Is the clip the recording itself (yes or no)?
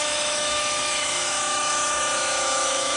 no